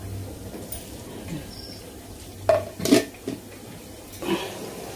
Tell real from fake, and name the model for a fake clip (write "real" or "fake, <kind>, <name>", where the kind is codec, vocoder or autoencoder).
real